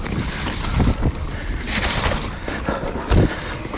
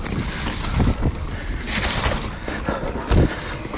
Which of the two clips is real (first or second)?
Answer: second